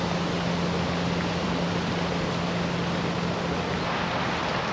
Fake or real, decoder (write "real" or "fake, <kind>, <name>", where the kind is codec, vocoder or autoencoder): real